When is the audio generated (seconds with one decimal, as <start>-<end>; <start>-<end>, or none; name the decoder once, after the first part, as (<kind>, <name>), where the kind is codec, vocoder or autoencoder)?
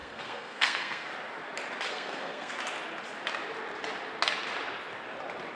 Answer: 0.0-1.1 (codec, SNAC); 1.9-2.5